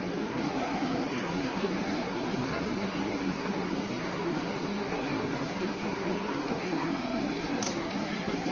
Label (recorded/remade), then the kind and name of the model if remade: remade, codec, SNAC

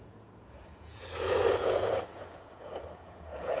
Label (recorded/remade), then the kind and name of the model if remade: remade, vocoder, Vocos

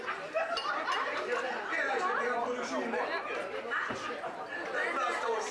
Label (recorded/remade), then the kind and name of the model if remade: recorded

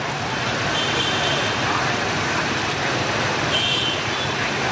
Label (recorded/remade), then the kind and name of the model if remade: remade, vocoder, BigVGAN v2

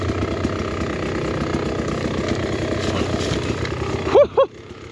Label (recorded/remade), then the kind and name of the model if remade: recorded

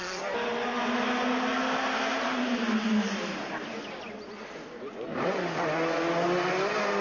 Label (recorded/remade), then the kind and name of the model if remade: recorded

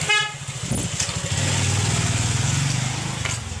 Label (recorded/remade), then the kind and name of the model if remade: recorded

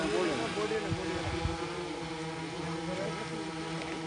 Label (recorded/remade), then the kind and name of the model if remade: recorded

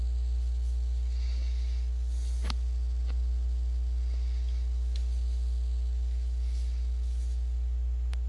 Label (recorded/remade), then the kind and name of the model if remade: recorded